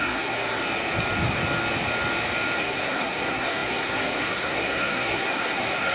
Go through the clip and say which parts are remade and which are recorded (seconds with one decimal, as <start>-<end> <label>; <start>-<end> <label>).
0.0-0.6 remade; 0.6-2.6 recorded; 2.6-5.9 remade

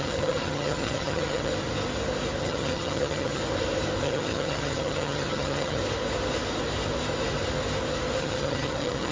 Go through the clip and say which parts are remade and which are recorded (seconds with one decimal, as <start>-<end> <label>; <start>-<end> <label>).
0.0-1.5 remade; 1.5-2.4 recorded; 2.4-3.4 remade; 3.4-4.0 recorded; 4.0-5.8 remade; 5.8-8.2 recorded; 8.2-9.1 remade

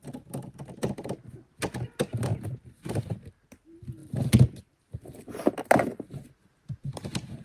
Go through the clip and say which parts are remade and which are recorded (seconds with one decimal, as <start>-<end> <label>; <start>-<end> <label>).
0.0-5.9 recorded; 5.9-6.5 remade; 6.5-7.4 recorded

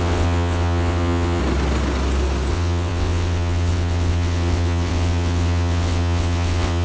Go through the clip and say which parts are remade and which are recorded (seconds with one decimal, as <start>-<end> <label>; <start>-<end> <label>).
0.0-1.4 remade; 1.4-2.5 recorded; 2.5-6.8 remade

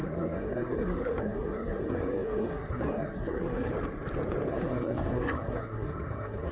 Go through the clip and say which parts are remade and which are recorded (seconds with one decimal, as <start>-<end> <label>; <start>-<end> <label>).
0.0-3.7 remade; 3.7-4.5 recorded; 4.5-6.5 remade

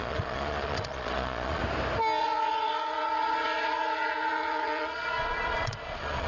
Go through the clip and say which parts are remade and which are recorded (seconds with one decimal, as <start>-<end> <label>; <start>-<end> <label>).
0.0-1.6 remade; 1.6-2.2 recorded; 2.2-6.3 remade

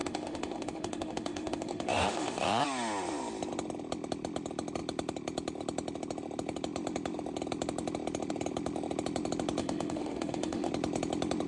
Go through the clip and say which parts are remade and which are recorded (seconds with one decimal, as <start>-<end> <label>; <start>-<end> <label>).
0.0-2.6 remade; 2.6-9.6 recorded; 9.6-10.7 remade; 10.7-11.5 recorded